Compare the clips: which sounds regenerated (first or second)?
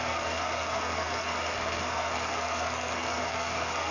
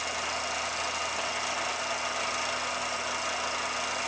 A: first